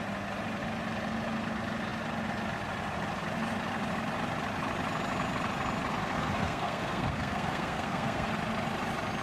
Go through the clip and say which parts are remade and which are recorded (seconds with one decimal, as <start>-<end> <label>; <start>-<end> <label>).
0.0-5.9 recorded; 5.9-8.3 remade; 8.3-9.2 recorded